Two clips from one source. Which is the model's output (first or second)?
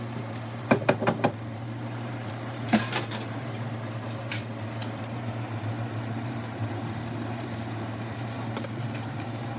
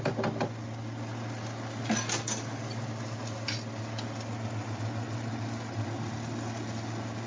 first